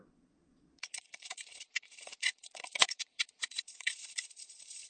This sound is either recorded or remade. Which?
remade